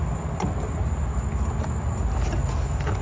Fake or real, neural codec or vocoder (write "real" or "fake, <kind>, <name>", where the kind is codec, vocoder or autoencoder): real